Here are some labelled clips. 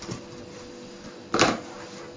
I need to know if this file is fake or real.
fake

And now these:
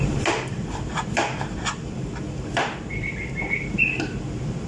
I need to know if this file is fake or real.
fake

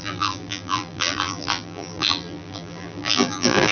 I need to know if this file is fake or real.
fake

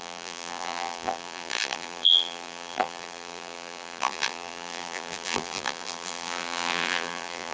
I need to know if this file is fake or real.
fake